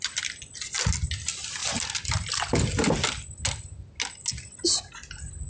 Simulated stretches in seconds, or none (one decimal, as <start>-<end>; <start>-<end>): none